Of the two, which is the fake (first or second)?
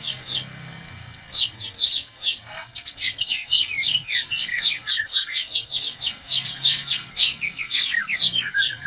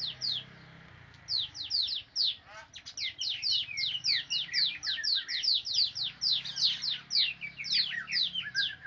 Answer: first